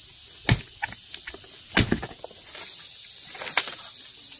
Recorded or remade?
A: recorded